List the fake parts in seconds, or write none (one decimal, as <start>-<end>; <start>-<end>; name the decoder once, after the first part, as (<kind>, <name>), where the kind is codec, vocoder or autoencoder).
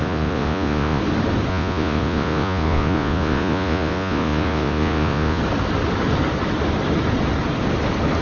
0.0-1.0 (vocoder, Vocos); 1.5-5.4